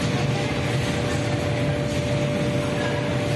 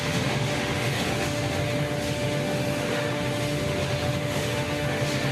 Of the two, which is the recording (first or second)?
first